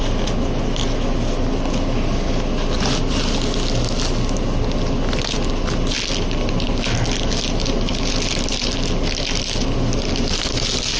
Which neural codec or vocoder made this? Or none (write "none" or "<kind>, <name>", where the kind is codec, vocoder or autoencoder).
none